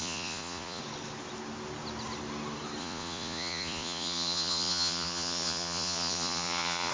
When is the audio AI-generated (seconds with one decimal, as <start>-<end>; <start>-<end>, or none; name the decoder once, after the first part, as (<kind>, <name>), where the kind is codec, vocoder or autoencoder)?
0.0-0.8 (vocoder, Vocos); 2.8-6.9